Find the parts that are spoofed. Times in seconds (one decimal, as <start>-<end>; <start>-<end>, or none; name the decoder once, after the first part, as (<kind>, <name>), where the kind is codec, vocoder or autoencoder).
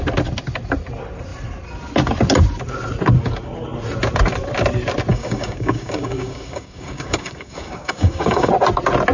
5.1-8.5 (codec, DAC)